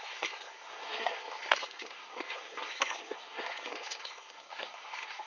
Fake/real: fake